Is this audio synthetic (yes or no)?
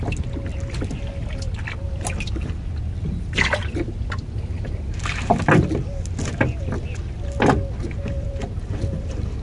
no